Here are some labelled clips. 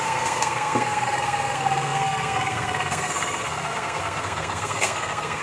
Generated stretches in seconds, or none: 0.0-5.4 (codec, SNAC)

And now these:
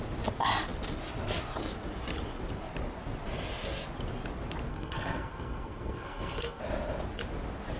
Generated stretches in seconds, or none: 4.7-6.6 (codec, SNAC)

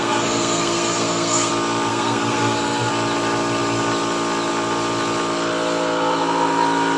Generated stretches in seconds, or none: 0.0-1.5 (codec, SNAC); 1.9-2.9

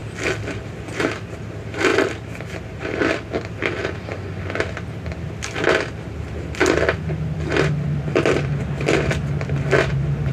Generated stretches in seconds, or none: none

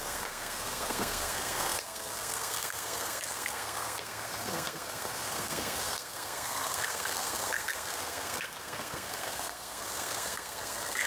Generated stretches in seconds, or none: 0.0-11.1 (codec, SNAC)

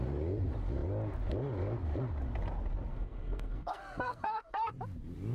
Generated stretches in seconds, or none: 2.9-4.7 (codec, SNAC)

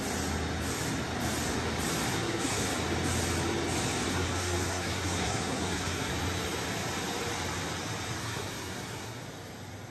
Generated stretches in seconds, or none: 2.1-2.7 (codec, SNAC); 4.1-6.1; 8.2-9.2